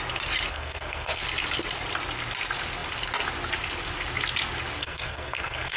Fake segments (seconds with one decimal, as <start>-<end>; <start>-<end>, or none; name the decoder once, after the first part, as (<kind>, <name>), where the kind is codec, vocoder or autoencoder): 0.5-1.2 (codec, SNAC); 4.8-5.8